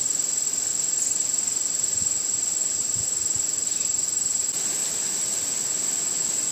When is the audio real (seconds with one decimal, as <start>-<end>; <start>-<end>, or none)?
0.0-0.7; 2.8-6.5